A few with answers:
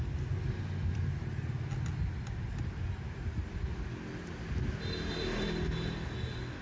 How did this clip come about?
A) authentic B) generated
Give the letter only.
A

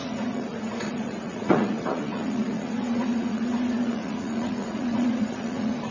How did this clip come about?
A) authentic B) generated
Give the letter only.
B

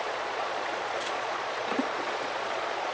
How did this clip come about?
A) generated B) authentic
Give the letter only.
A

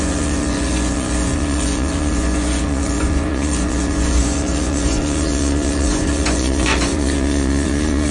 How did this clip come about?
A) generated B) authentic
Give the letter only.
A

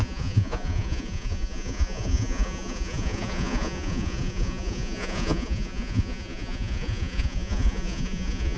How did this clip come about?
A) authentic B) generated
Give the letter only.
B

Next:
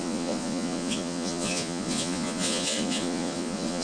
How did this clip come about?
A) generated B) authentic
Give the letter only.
A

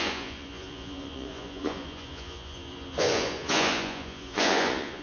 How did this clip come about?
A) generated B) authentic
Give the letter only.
A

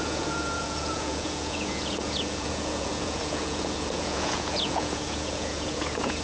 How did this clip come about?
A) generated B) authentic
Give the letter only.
A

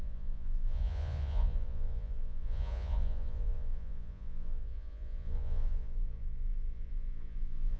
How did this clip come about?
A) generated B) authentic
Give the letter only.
A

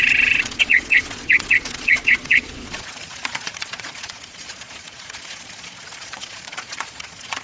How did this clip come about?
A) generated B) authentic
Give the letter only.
A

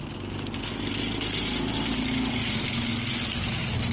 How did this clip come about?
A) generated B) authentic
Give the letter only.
B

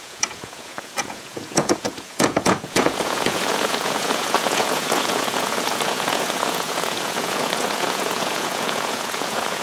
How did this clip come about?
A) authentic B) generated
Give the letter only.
B